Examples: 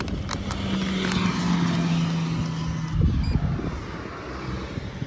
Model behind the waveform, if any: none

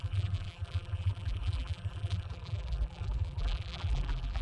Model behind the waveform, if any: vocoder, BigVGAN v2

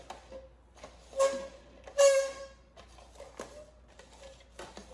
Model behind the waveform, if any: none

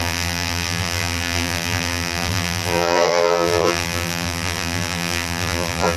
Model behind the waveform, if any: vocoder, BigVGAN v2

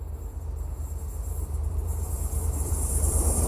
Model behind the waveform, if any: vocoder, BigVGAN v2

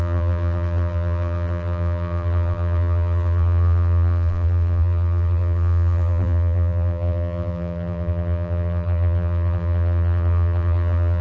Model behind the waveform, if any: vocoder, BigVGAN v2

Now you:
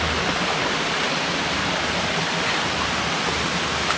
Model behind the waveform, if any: none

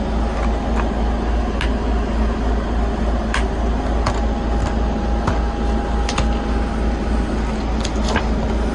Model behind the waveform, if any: none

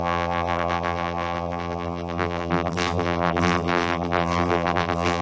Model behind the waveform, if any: vocoder, BigVGAN v2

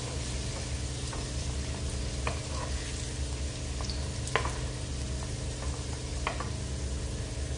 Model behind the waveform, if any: none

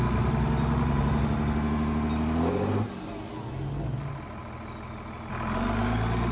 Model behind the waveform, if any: none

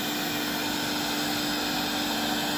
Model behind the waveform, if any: none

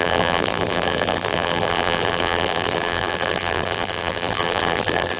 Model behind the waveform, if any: vocoder, BigVGAN v2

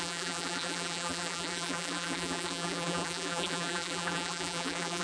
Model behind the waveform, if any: vocoder, BigVGAN v2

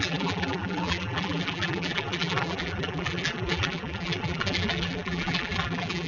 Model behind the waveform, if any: vocoder, BigVGAN v2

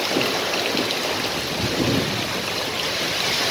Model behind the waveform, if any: none